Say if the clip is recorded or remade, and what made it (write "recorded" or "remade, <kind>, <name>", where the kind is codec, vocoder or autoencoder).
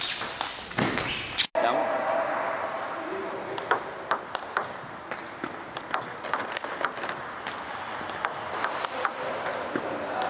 recorded